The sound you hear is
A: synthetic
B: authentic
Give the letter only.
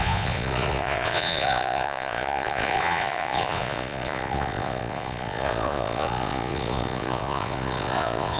A